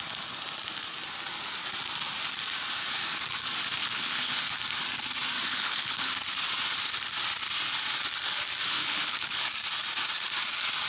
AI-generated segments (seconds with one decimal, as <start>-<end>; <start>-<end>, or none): 3.8-4.4; 5.5-6.1; 8.6-9.4